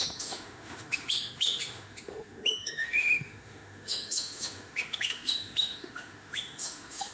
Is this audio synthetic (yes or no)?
yes